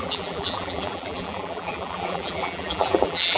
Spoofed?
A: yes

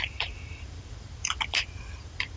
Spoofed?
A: yes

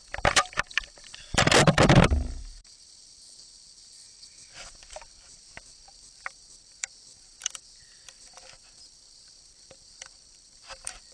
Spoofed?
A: yes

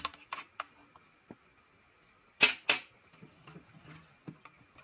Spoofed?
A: no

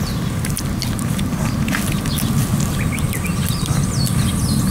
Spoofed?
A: no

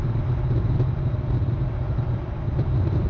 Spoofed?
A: yes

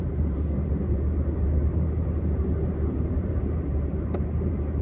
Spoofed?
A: yes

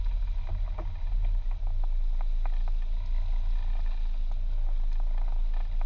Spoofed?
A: no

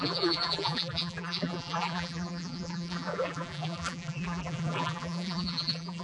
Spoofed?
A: yes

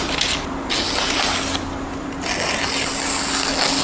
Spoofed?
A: no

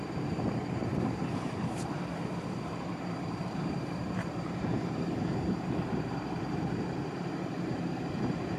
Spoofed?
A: yes